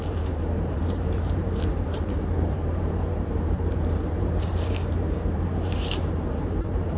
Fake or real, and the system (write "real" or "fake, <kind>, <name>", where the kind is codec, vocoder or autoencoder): fake, vocoder, BigVGAN v2